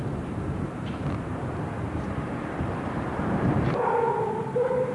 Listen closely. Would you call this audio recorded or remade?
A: remade